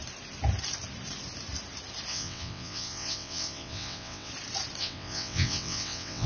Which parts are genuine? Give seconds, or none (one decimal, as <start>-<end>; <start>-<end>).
0.0-2.1; 4.3-4.8